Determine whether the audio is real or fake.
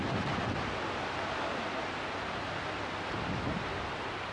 real